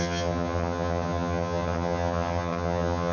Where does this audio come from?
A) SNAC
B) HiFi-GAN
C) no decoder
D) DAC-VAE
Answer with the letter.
B